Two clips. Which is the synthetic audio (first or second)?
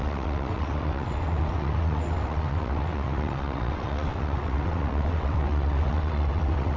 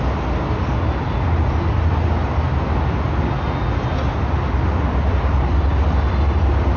first